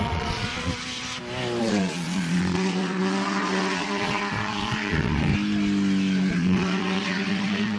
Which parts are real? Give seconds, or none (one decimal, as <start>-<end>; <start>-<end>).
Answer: 0.7-1.6; 5.3-6.3